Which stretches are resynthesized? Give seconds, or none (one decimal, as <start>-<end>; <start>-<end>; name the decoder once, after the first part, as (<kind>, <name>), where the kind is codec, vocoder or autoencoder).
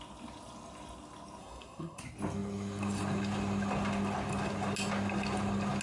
1.4-2.0 (codec, SNAC)